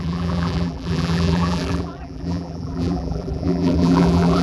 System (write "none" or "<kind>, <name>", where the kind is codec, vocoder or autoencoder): vocoder, BigVGAN v2